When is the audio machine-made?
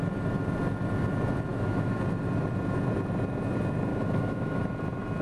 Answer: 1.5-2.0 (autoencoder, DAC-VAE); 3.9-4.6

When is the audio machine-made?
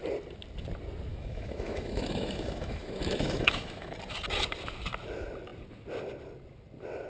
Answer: 1.1-3.9 (autoencoder, DAC-VAE)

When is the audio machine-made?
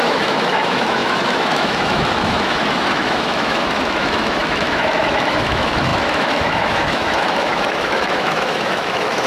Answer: 0.0-9.3 (autoencoder, DAC-VAE)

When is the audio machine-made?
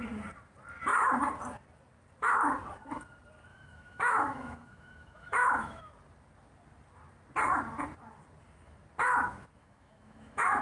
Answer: 3.5-5.8 (autoencoder, DAC-VAE); 9.6-10.6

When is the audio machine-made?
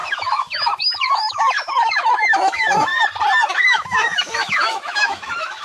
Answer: 0.0-2.9 (autoencoder, DAC-VAE); 3.5-5.6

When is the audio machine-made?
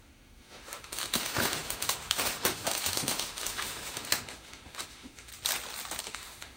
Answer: 0.0-5.3 (autoencoder, DAC-VAE); 6.0-6.6